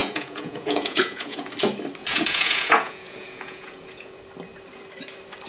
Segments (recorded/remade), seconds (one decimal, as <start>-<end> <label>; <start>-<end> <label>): 0.0-1.5 remade; 1.5-2.0 recorded; 2.0-4.2 remade; 4.2-5.5 recorded